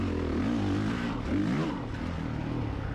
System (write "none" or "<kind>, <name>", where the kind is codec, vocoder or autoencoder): none